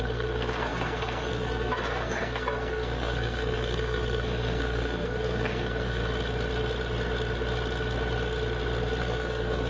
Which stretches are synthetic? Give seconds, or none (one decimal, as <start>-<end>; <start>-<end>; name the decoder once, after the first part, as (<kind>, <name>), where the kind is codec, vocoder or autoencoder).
0.0-6.0 (codec, SNAC); 9.0-9.7